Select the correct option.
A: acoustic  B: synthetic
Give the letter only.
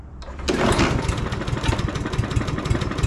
A